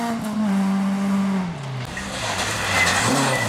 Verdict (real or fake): real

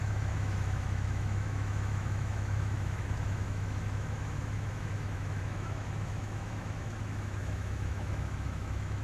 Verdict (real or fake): fake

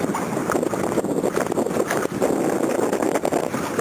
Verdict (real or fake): real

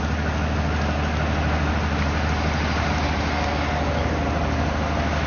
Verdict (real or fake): real